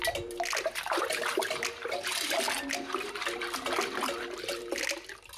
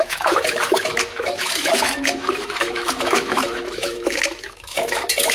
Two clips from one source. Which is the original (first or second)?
first